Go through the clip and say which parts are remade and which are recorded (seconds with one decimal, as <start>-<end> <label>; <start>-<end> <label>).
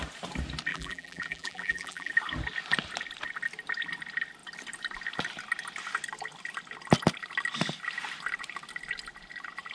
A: 0.0-0.7 recorded; 0.7-2.1 remade; 2.1-9.7 recorded